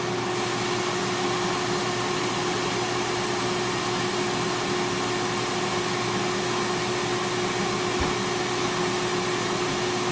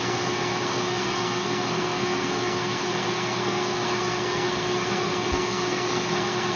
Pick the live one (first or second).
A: first